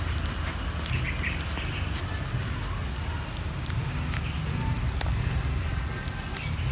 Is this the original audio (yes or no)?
yes